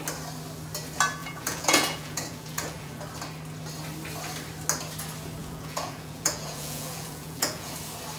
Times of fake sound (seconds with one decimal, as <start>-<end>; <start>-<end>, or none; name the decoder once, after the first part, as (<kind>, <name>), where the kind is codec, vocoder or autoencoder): 1.2-3.0 (vocoder, Vocos); 5.4-7.7